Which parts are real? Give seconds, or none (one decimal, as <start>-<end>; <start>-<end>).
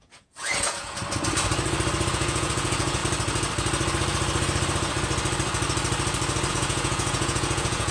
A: 1.0-2.1; 3.0-6.5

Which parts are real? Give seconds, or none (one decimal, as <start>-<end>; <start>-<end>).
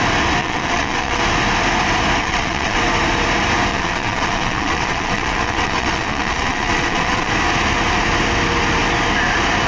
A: 0.0-0.4; 1.2-2.2; 2.8-3.7; 7.3-9.7